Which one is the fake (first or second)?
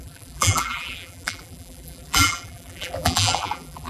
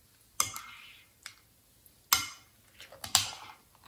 first